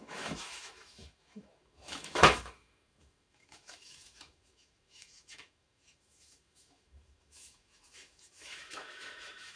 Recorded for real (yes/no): no